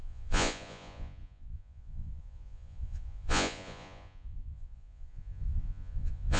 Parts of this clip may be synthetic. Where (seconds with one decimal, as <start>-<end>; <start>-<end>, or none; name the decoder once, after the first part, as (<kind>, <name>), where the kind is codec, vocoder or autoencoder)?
0.0-6.4 (vocoder, Vocos)

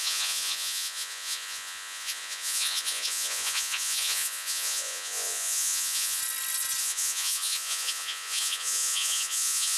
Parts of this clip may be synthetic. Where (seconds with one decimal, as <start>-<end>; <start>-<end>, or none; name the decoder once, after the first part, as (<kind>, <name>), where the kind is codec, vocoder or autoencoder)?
0.0-6.2 (vocoder, Vocos); 6.8-9.8

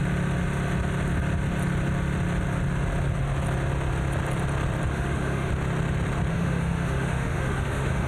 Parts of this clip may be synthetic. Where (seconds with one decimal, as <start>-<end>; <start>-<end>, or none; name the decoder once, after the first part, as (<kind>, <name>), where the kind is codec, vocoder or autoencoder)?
4.9-5.5 (autoencoder, DAC-VAE); 6.3-8.1

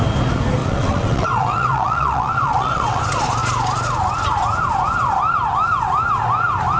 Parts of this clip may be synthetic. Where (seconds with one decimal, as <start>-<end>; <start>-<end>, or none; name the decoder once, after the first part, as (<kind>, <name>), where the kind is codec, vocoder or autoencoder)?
0.6-3.0 (vocoder, WaveNeXt)

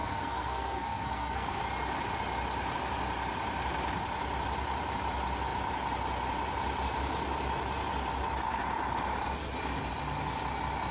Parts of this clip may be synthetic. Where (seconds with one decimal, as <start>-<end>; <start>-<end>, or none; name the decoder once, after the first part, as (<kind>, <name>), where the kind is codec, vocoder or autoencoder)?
0.0-1.6 (codec, SNAC)

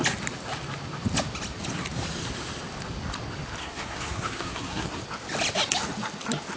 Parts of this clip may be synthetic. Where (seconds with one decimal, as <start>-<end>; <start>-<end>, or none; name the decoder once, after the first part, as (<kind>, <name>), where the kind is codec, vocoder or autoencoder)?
3.6-5.0 (codec, SNAC)